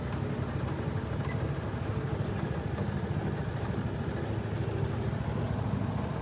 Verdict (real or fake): real